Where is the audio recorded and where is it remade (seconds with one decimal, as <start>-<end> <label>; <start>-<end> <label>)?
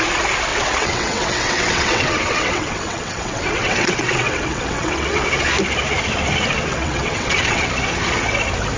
0.0-0.5 recorded; 0.5-5.3 remade; 5.3-6.7 recorded; 6.7-7.7 remade; 7.7-8.8 recorded